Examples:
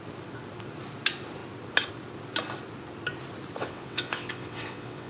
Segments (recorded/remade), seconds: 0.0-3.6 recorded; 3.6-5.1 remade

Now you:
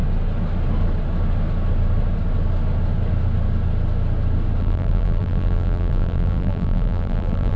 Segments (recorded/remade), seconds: 0.0-4.6 recorded; 4.6-7.6 remade